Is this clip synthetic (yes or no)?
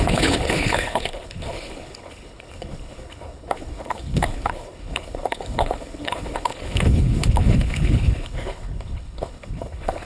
yes